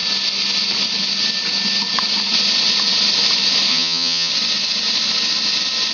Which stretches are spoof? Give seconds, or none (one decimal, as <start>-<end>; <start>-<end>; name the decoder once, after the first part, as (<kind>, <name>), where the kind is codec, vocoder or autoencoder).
3.7-4.3 (vocoder, HiFi-GAN)